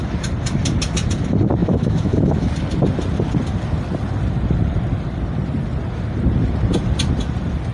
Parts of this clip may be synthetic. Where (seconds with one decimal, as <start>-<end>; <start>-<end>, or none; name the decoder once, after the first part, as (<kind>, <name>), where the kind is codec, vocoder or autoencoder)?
1.6-2.5 (autoencoder, DAC-VAE)